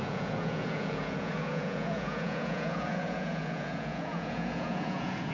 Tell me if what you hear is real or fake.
fake